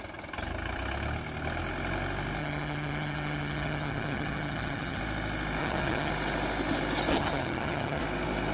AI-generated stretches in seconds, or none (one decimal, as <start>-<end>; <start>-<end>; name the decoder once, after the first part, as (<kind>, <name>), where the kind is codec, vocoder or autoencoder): 2.4-5.0 (vocoder, HiFi-GAN); 5.6-6.1; 7.1-8.0